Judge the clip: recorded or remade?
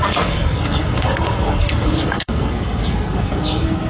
remade